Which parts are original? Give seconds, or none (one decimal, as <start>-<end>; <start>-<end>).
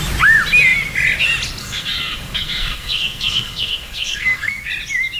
0.0-1.6; 4.7-5.2